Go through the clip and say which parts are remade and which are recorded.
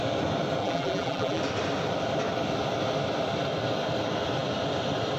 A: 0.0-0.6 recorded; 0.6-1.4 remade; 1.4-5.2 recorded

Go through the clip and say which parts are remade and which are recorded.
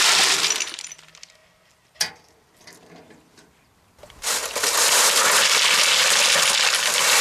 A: 0.0-7.2 recorded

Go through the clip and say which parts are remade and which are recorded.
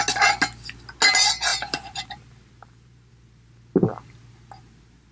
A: 0.0-1.5 recorded; 1.5-3.1 remade; 3.1-5.1 recorded